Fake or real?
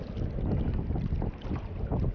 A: real